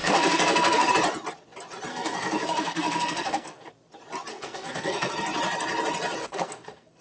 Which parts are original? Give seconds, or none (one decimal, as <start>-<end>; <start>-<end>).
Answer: 0.9-1.9; 3.7-4.3; 5.1-6.2